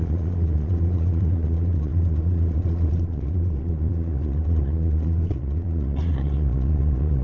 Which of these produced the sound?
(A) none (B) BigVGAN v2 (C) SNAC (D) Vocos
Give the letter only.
D